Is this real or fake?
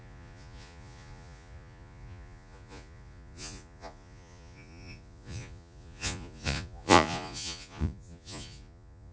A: fake